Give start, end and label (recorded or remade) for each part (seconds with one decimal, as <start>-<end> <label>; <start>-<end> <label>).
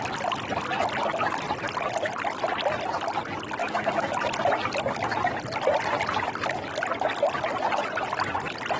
0.0-3.6 recorded; 3.6-4.1 remade; 4.1-8.8 recorded